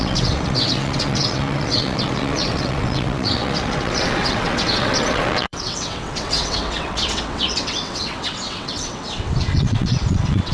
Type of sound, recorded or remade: remade